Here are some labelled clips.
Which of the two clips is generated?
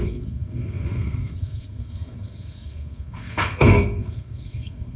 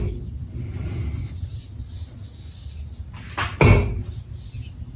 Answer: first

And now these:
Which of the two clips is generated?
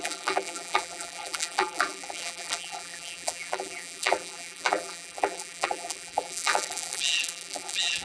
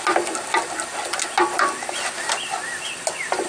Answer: first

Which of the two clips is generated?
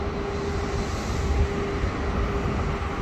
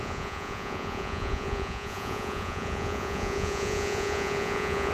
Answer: second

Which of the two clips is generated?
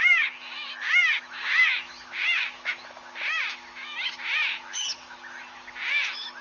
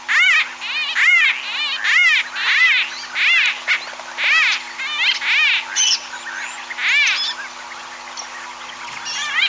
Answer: first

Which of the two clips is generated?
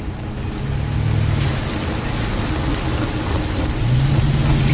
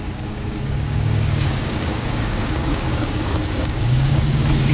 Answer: second